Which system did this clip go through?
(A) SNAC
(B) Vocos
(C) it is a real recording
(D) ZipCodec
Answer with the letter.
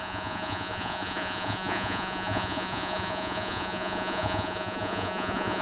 B